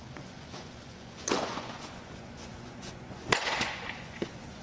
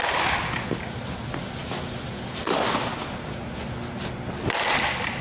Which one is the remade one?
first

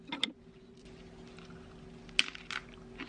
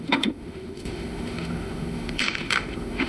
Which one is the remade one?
second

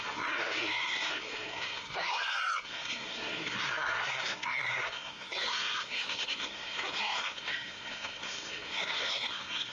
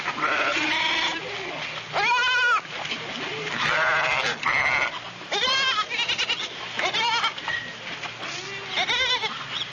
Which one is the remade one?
first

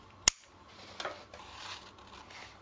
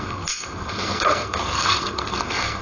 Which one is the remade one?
second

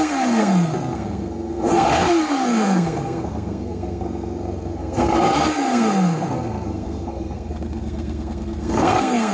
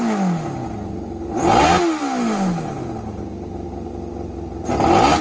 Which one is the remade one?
first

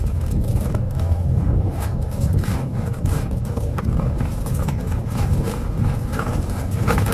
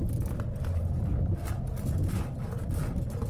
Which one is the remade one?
first